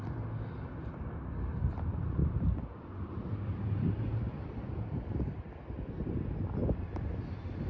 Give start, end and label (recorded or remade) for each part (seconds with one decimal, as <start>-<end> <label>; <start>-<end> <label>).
0.0-2.2 recorded; 2.2-5.6 remade; 5.6-7.7 recorded